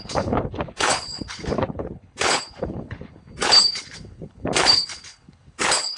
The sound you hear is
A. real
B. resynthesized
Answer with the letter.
B